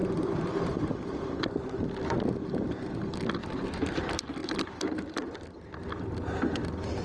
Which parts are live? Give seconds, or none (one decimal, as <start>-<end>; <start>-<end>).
1.2-3.4; 4.0-4.4; 5.5-7.0